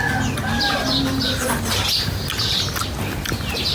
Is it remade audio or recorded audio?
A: recorded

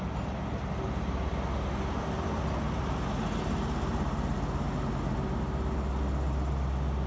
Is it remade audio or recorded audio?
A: recorded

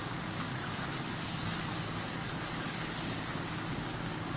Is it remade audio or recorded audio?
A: remade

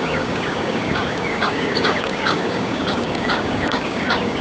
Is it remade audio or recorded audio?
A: remade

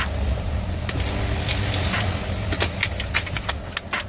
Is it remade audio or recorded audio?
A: recorded